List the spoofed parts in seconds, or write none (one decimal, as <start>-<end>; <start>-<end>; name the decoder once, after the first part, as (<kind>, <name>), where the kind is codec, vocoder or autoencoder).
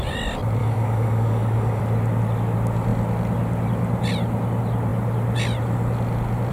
0.6-1.8 (codec, DAC)